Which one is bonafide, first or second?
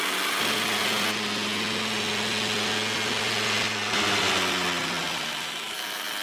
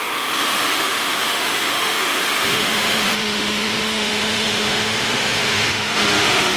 first